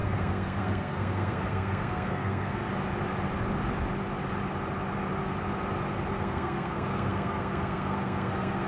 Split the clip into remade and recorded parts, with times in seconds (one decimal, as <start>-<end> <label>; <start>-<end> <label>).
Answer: 0.0-2.6 remade; 2.6-6.1 recorded; 6.1-8.7 remade